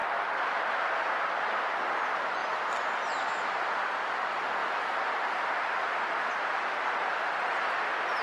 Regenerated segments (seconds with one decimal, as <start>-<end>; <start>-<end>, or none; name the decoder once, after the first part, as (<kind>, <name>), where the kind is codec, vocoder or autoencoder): none